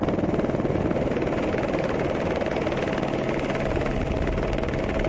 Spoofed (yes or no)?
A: no